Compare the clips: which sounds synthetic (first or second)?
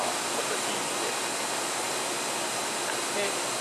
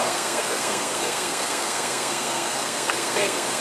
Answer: second